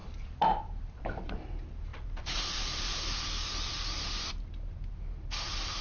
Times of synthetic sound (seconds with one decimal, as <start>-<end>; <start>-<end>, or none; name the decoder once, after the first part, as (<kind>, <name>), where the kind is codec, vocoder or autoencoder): 0.0-1.3 (vocoder, BigVGAN v2); 1.9-3.0